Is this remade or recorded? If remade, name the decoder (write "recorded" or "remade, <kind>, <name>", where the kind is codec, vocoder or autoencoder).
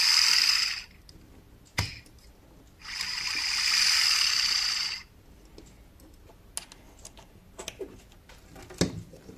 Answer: recorded